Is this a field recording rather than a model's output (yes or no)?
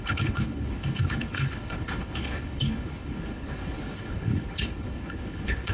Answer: no